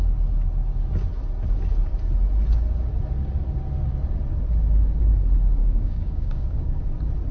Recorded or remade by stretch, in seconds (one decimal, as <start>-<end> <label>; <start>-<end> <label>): 0.0-5.6 recorded; 5.6-6.8 remade; 6.8-7.3 recorded